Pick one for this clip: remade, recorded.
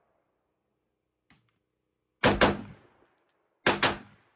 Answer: recorded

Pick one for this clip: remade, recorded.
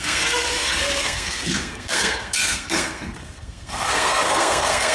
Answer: remade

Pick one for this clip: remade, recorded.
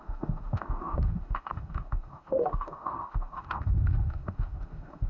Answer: remade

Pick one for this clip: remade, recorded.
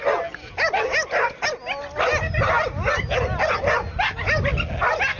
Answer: recorded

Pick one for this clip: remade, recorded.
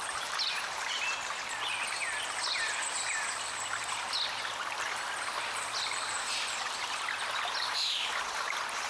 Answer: recorded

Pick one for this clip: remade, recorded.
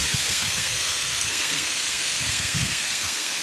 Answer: remade